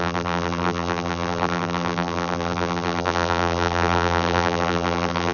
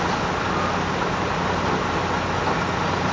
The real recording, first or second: second